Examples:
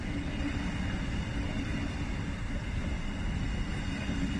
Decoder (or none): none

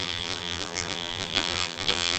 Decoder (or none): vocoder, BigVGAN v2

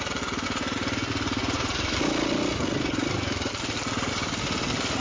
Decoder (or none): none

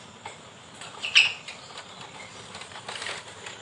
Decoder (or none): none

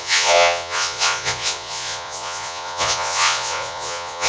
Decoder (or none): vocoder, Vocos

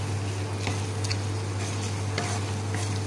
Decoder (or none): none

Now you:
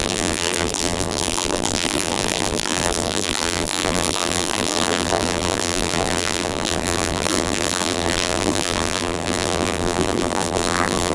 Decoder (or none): vocoder, BigVGAN v2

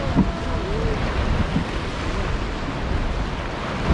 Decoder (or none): none